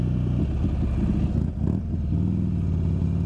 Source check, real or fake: real